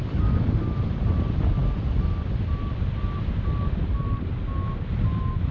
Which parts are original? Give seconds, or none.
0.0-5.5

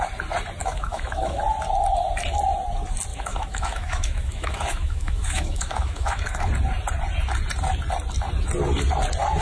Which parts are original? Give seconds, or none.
0.0-0.6; 1.4-3.1; 6.5-9.4

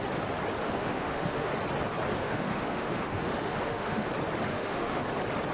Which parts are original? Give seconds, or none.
0.0-0.6; 1.5-2.2; 4.1-4.5; 5.0-5.5

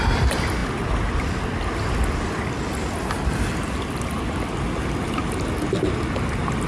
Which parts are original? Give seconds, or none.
0.0-6.7

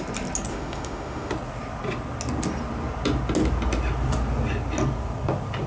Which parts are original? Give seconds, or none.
0.0-0.5; 1.3-5.7

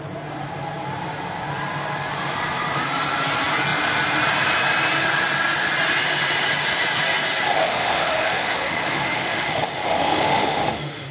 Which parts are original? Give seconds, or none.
0.0-7.6

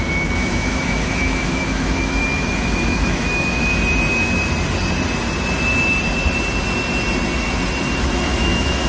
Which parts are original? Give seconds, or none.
3.7-8.0

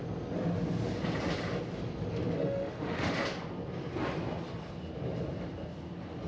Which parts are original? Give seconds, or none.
0.0-2.4; 3.2-6.3